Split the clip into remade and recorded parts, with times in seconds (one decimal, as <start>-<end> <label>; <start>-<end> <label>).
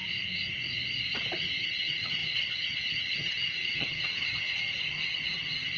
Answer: 0.0-1.6 recorded; 1.6-5.8 remade